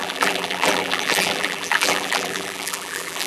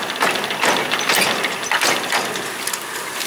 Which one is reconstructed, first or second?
first